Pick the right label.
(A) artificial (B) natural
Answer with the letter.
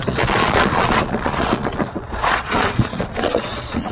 A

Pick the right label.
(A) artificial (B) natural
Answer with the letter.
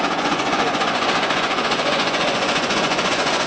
A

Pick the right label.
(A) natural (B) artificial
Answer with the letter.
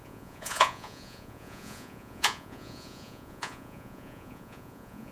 B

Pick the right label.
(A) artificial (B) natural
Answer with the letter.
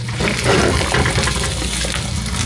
B